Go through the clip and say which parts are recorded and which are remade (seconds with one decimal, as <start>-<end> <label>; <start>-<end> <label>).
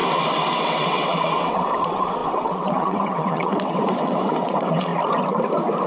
0.0-0.6 recorded; 0.6-4.9 remade; 4.9-5.9 recorded